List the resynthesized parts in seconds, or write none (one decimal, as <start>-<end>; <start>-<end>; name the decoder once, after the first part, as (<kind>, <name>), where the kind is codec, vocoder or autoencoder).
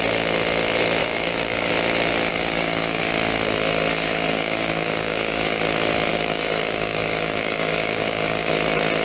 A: 1.0-1.7 (codec, DAC); 2.3-3.0; 3.9-5.6; 6.1-8.5